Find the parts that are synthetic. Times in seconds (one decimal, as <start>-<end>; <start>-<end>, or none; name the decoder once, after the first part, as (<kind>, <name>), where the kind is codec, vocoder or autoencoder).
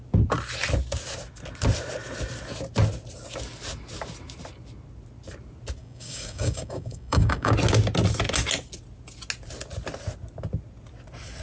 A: 5.8-7.5 (codec, DAC)